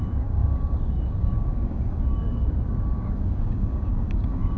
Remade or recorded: remade